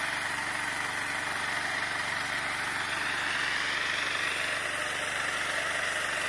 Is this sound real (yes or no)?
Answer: yes